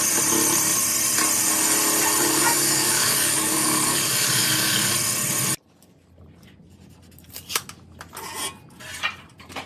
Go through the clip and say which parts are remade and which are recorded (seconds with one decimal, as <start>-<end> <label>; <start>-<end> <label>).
0.0-2.4 recorded; 2.4-4.9 remade; 4.9-9.7 recorded